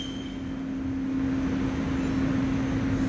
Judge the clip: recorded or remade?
recorded